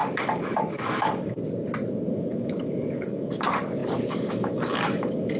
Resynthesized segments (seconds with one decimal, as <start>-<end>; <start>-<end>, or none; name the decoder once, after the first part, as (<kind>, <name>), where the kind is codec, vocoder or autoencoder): 0.0-1.4 (codec, DAC); 2.1-5.4

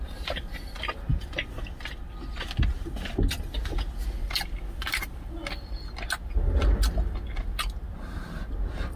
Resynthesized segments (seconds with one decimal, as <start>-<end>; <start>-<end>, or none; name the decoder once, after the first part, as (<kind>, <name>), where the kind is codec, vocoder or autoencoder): none

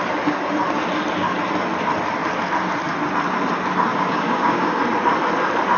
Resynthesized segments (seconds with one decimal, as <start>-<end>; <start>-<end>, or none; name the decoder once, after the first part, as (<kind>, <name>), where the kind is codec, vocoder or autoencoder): 3.9-4.8 (codec, DAC)

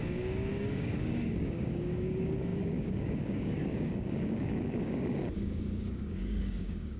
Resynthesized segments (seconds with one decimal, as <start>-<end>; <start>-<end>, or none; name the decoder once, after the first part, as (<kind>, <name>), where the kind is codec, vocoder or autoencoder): 0.0-7.0 (codec, DAC)

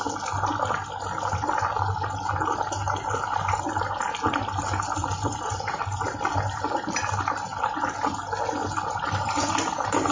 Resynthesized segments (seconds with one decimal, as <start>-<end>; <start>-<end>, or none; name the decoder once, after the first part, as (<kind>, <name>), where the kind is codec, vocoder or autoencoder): none

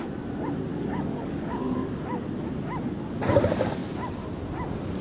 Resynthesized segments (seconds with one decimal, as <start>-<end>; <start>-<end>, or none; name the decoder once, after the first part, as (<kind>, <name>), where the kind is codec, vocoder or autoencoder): 0.7-1.9 (codec, DAC)